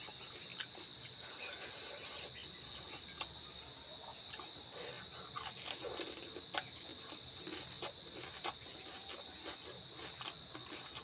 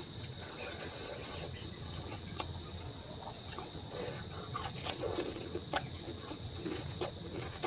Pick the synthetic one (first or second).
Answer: second